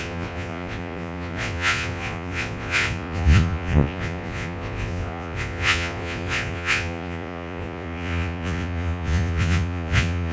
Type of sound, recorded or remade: remade